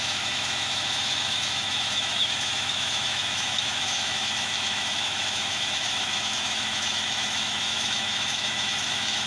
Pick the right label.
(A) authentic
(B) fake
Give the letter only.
B